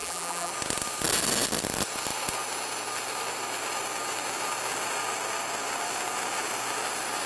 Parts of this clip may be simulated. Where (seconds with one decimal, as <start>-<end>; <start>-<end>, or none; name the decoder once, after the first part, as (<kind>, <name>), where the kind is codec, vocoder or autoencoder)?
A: 0.0-0.5 (vocoder, BigVGAN v2)